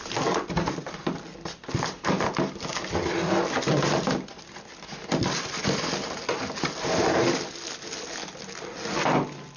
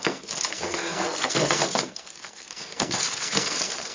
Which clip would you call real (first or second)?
first